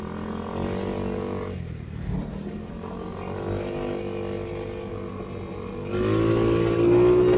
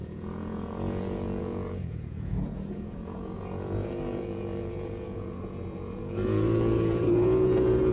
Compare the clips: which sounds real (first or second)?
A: first